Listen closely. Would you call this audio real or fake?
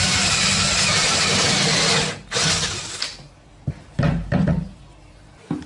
real